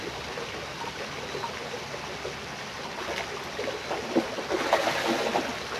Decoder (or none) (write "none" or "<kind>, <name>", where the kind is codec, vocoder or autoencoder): none